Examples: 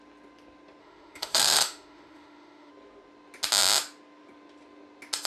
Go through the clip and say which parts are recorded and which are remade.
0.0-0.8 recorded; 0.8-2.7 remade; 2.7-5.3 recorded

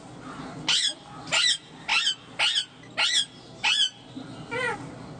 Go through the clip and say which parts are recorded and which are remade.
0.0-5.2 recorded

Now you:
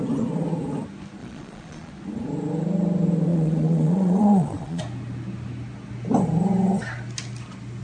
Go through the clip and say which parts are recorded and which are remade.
0.0-1.2 recorded; 1.2-1.9 remade; 1.9-3.3 recorded; 3.3-4.8 remade; 4.8-7.8 recorded